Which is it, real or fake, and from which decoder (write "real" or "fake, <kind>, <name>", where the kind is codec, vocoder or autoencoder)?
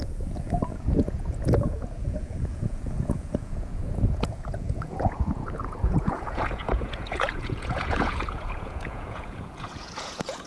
fake, vocoder, Vocos